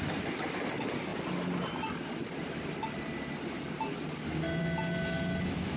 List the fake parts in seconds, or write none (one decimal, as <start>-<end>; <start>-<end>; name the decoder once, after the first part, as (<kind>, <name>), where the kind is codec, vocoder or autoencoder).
none